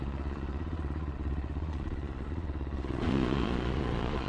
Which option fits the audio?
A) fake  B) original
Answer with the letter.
A